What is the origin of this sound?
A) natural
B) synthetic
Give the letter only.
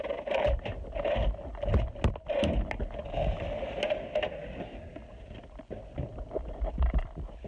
A